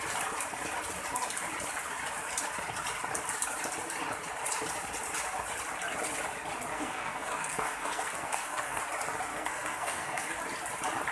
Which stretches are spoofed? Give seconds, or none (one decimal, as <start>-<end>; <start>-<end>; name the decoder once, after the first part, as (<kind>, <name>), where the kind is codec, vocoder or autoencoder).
6.7-8.8 (codec, SNAC); 9.3-10.3